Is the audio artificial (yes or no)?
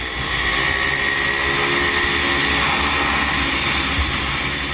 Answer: no